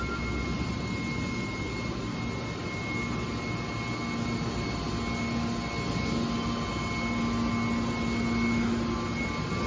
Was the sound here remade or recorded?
recorded